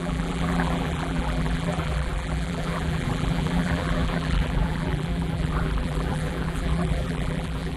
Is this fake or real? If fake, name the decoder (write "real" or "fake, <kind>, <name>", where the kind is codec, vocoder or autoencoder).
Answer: fake, vocoder, BigVGAN v2